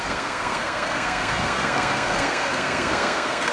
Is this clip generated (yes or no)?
yes